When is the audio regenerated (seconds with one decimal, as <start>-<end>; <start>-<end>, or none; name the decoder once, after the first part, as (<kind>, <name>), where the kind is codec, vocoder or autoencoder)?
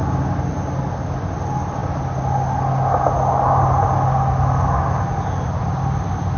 none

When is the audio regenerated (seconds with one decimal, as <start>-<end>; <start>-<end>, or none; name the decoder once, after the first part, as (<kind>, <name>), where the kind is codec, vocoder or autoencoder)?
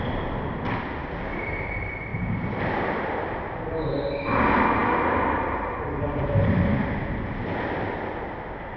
none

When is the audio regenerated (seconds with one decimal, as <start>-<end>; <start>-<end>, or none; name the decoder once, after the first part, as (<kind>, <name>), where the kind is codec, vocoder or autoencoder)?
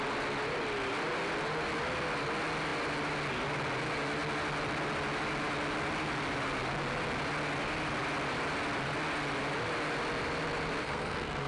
10.8-11.5 (codec, SNAC)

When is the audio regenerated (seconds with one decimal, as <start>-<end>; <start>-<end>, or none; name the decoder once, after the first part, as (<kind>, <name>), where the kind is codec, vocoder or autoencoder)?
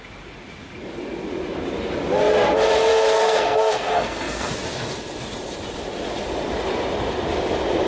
2.9-4.5 (codec, SNAC)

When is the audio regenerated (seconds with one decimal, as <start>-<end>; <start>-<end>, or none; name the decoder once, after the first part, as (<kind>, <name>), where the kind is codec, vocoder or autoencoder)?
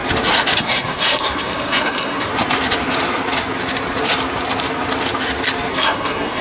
0.6-2.3 (codec, SNAC); 5.7-6.4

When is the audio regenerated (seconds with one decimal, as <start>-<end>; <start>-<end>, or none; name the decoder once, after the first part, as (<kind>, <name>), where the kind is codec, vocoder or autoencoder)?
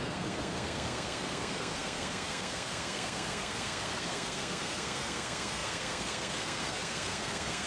0.0-7.7 (codec, SNAC)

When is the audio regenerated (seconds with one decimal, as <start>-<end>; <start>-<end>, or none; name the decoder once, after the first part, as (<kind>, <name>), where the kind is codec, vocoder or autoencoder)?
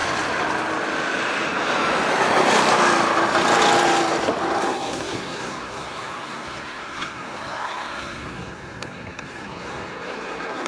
4.6-10.7 (codec, SNAC)